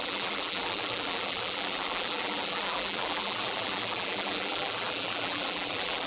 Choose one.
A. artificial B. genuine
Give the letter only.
A